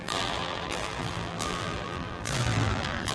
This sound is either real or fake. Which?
fake